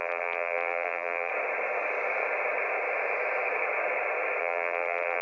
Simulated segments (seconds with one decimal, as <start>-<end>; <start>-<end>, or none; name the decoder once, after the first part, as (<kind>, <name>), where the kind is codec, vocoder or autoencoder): 0.0-1.3 (vocoder, BigVGAN v2); 4.4-5.2